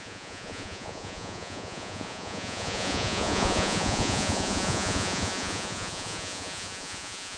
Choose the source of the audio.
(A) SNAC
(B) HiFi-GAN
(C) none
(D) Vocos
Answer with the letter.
D